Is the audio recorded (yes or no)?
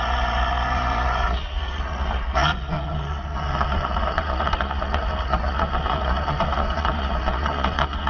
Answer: no